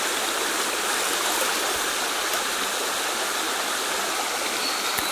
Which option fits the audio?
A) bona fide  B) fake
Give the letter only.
A